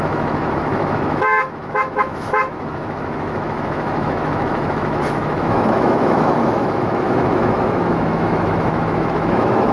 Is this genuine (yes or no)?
no